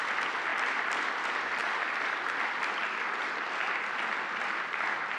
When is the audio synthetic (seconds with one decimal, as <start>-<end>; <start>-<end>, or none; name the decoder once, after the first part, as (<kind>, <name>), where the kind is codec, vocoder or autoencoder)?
0.0-5.2 (vocoder, BigVGAN v2)